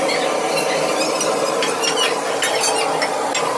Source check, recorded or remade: recorded